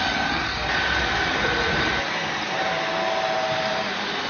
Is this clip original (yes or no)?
yes